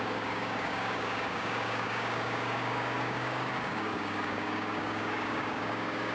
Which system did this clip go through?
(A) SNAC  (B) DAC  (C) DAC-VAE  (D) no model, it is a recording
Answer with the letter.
B